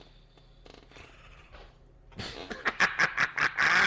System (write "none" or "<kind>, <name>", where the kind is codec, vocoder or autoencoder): none